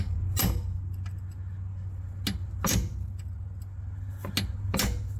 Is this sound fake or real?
real